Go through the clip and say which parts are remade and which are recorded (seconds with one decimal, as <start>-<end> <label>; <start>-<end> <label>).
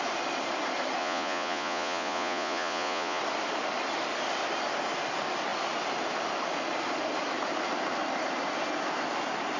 0.0-1.0 recorded; 1.0-3.2 remade; 3.2-9.6 recorded